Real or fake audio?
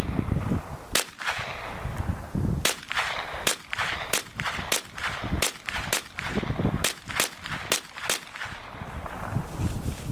real